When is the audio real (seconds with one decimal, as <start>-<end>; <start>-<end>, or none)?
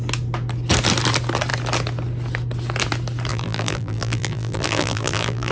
0.0-3.3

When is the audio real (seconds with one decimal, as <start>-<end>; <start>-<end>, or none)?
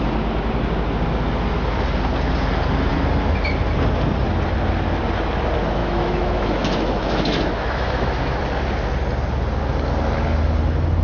0.0-5.8; 8.4-11.0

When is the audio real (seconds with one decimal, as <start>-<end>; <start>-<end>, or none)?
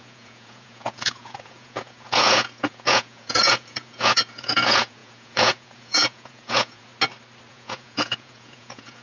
6.9-7.5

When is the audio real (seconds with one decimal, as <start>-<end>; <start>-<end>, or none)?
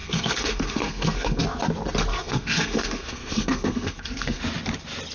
1.4-2.1; 4.4-5.1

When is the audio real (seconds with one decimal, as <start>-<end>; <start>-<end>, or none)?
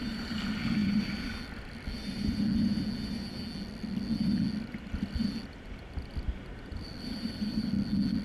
0.0-6.7; 7.7-8.2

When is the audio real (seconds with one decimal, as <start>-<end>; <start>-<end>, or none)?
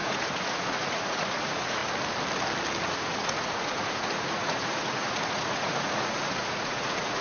1.8-2.9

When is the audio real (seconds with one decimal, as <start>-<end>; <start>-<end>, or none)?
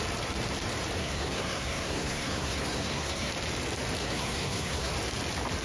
0.0-1.0; 3.3-4.0; 4.9-5.6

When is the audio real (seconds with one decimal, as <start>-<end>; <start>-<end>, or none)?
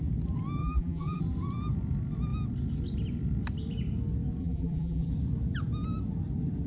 0.0-0.6; 1.2-4.4; 5.1-6.7